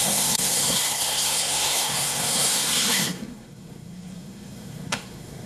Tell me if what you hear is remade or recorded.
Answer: remade